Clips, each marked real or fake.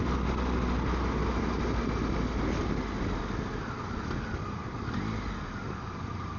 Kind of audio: real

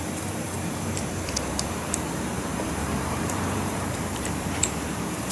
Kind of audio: fake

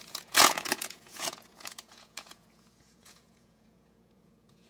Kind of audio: fake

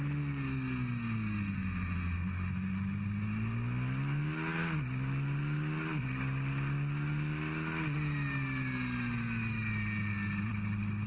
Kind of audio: real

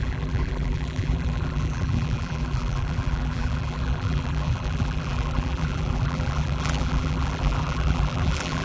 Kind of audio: fake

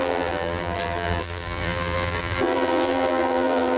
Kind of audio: fake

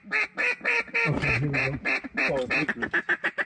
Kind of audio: real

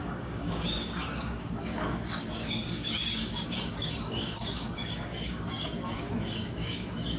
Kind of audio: fake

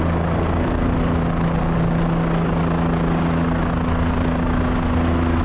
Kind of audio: real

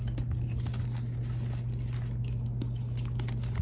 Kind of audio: real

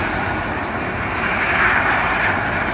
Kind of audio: real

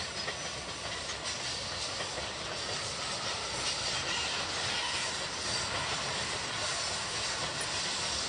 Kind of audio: real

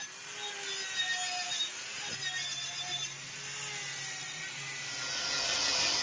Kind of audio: real